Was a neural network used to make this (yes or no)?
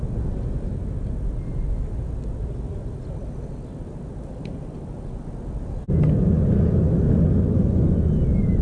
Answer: no